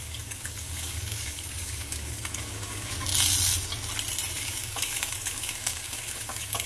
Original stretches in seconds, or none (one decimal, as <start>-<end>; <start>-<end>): 3.1-4.3